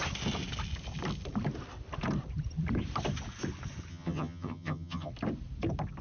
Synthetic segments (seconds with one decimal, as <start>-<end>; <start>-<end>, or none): 3.9-5.1